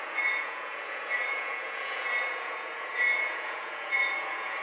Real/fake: fake